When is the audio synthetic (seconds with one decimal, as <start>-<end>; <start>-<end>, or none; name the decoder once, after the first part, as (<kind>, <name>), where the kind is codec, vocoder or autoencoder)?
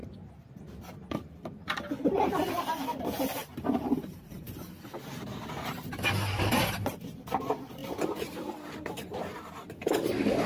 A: 2.2-10.5 (vocoder, BigVGAN v2)